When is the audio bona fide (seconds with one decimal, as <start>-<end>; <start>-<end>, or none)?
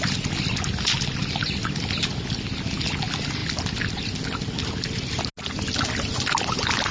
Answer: 0.0-6.9